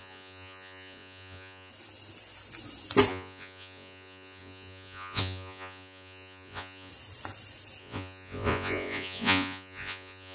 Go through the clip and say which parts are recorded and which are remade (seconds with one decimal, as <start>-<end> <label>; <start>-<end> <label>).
0.0-1.7 remade; 1.7-3.1 recorded; 3.1-6.9 remade; 6.9-7.8 recorded; 7.8-10.3 remade